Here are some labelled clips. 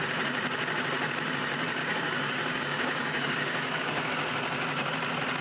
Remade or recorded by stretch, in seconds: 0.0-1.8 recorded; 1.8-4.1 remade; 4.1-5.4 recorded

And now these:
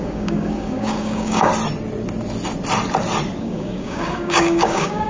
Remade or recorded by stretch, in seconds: 0.0-1.5 remade; 1.5-3.4 recorded; 3.4-5.1 remade

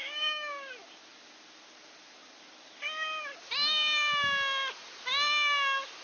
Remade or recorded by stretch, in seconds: 0.0-0.7 remade; 0.7-6.0 recorded

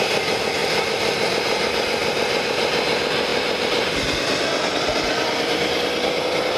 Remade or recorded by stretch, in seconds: 0.0-6.6 recorded